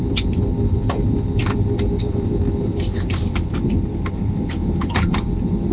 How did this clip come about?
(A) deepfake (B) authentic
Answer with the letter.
A